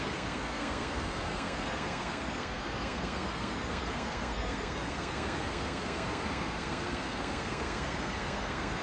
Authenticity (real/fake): fake